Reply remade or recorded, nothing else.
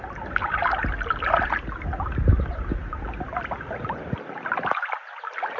recorded